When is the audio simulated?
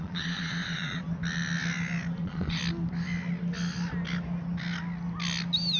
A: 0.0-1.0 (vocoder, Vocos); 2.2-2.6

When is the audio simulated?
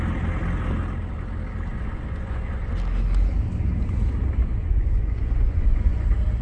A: 1.7-2.7 (vocoder, Vocos); 4.6-6.0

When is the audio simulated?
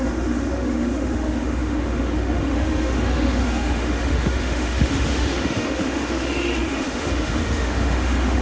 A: 0.0-8.4 (autoencoder, DAC-VAE)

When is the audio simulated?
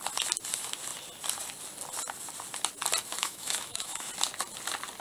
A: 3.2-4.1 (autoencoder, DAC-VAE)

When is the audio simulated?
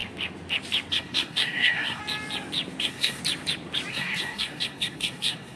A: 0.9-2.0 (codec, SNAC); 2.8-3.2; 3.9-5.6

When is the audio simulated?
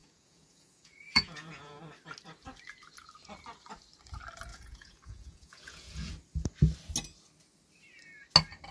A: 0.0-1.8 (vocoder, Vocos); 4.5-6.1